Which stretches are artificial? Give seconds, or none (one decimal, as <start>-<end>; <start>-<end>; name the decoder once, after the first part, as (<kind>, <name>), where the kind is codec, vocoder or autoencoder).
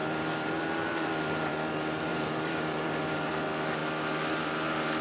0.0-1.7 (vocoder, BigVGAN v2); 2.1-3.3